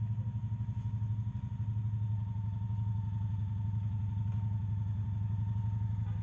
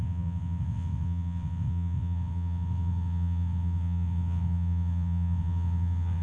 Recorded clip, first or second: first